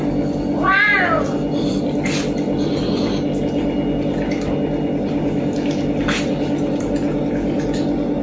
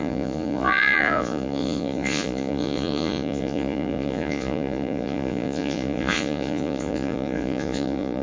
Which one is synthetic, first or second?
second